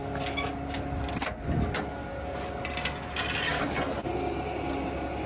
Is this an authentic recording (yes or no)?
yes